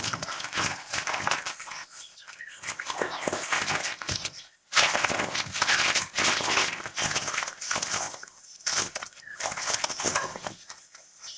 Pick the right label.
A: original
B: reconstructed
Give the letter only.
B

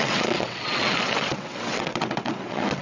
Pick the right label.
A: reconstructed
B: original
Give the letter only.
A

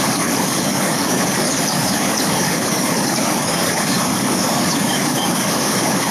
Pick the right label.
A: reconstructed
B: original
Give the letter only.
A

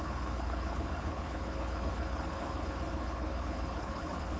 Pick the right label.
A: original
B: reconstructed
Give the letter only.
B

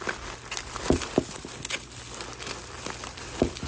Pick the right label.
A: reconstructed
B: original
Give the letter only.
B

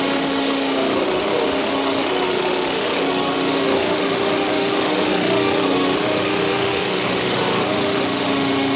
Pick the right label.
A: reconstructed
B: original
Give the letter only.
A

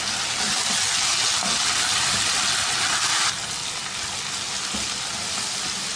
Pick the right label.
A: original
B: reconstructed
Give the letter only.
A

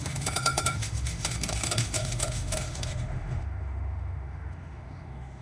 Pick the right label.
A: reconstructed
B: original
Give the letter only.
A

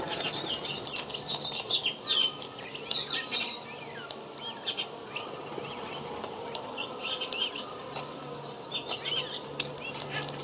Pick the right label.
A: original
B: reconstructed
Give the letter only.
A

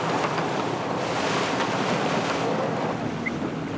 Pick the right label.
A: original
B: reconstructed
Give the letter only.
A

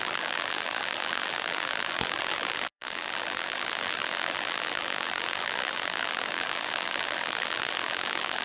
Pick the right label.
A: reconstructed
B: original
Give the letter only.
A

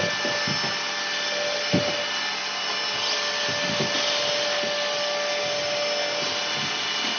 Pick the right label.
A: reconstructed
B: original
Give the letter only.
B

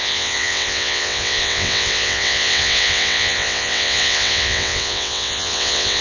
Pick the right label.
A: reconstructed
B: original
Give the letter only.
A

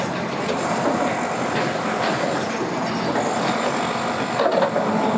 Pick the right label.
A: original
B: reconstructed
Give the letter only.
A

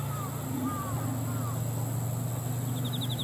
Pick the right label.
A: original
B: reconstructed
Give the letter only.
A